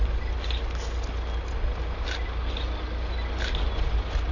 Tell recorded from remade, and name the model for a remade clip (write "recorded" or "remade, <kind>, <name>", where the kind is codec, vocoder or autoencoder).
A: recorded